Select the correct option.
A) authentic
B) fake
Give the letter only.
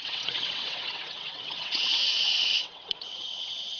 B